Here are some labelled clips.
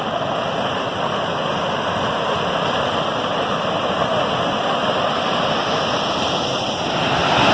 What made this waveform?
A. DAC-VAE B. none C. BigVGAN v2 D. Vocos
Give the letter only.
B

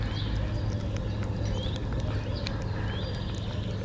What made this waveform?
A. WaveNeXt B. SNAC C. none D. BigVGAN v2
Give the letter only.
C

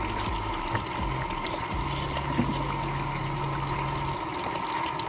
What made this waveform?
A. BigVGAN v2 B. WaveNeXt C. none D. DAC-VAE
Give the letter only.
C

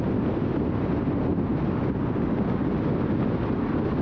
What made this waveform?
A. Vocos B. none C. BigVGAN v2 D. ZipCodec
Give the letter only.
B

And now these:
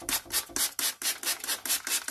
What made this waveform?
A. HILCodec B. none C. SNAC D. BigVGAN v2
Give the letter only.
B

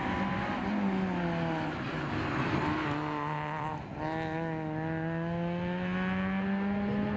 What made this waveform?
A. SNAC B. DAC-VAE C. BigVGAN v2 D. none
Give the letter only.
D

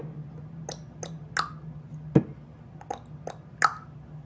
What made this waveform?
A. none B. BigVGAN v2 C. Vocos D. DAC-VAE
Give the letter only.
A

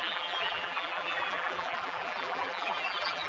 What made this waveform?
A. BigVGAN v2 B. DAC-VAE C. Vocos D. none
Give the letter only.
A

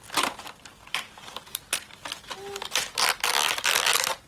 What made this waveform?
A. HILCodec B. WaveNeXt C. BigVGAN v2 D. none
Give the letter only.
D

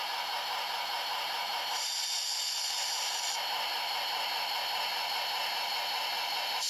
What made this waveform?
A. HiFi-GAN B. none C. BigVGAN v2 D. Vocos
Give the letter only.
B